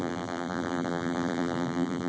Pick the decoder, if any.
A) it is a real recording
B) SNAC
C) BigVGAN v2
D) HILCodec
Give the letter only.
C